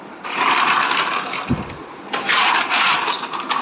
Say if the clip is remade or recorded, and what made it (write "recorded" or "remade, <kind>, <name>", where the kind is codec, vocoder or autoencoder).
remade, vocoder, BigVGAN v2